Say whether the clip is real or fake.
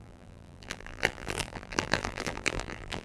fake